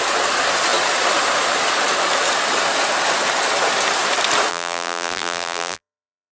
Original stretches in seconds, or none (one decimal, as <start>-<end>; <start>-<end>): 0.0-4.5